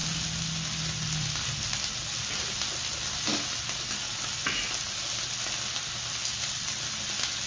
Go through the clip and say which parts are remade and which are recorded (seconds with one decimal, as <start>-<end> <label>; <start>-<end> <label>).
0.0-7.5 recorded